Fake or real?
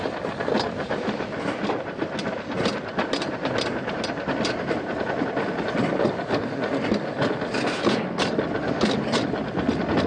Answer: real